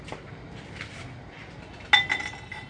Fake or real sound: real